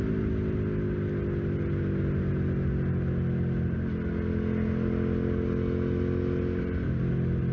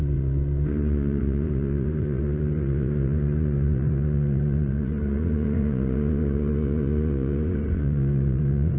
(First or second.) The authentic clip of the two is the first